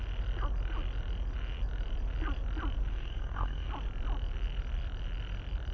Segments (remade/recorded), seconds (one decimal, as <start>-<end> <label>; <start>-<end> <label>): 0.0-2.9 recorded; 2.9-3.7 remade; 3.7-5.7 recorded